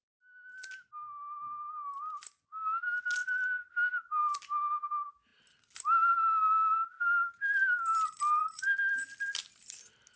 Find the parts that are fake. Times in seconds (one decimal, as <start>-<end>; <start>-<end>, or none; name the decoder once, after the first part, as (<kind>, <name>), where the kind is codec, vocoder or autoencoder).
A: none